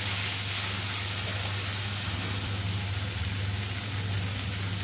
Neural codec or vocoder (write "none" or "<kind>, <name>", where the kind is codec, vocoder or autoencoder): none